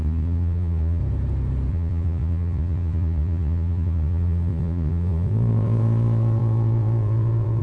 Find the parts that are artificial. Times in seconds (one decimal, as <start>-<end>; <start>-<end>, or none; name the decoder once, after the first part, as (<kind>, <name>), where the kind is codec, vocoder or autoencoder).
0.0-1.0 (vocoder, Vocos); 1.7-7.6